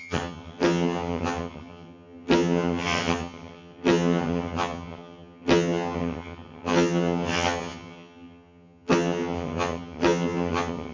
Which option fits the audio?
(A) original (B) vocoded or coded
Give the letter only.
B